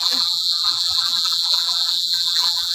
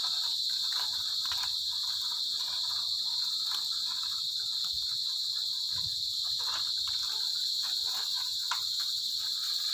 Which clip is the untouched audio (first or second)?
second